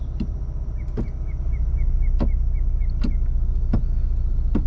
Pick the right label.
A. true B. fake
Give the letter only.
A